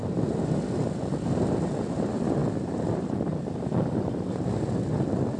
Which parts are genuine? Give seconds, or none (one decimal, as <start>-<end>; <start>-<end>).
0.0-2.4; 4.3-5.4